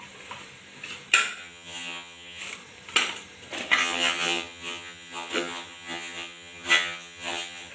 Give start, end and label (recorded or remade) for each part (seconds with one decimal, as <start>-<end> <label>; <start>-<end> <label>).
0.0-1.4 recorded; 1.4-2.4 remade; 2.4-3.8 recorded; 3.8-7.7 remade